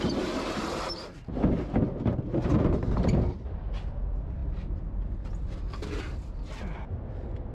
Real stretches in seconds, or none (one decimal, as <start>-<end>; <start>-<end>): 0.0-7.5